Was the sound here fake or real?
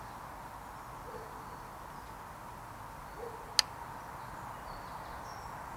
real